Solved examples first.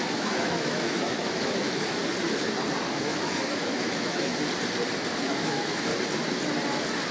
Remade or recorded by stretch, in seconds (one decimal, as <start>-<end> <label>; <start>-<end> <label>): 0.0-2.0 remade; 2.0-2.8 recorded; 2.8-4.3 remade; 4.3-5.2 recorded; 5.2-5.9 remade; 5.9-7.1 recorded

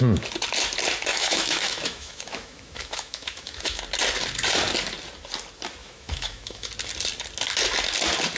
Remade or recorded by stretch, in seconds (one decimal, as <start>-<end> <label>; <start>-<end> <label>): 0.0-1.1 recorded; 1.1-3.8 remade; 3.8-5.8 recorded; 5.8-6.7 remade; 6.7-8.4 recorded

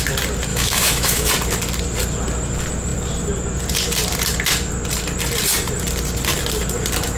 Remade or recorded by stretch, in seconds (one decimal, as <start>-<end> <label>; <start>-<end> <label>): 0.0-0.5 recorded; 0.5-1.3 remade; 1.3-7.2 recorded